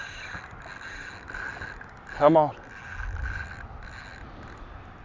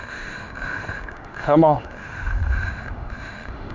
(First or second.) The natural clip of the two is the first